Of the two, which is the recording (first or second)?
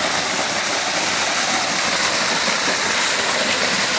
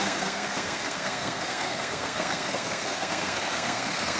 first